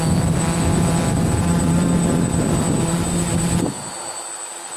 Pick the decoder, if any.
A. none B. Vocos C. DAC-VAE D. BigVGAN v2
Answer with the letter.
A